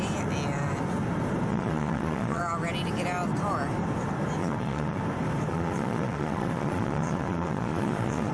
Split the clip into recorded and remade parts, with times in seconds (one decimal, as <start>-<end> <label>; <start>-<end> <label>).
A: 0.0-1.5 recorded; 1.5-2.4 remade; 2.4-4.4 recorded; 4.4-5.0 remade; 5.0-5.5 recorded; 5.5-8.3 remade